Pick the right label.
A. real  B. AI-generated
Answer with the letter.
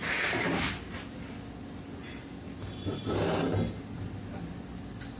A